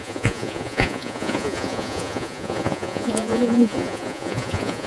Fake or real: fake